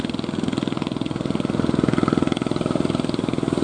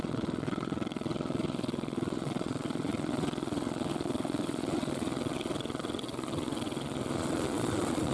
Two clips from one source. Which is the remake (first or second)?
second